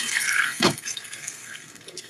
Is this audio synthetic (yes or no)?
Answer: yes